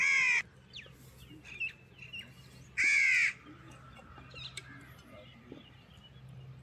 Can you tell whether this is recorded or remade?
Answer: recorded